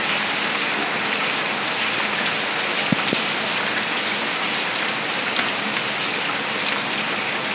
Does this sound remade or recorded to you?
recorded